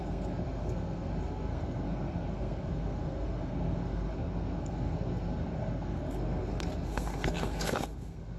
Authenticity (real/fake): fake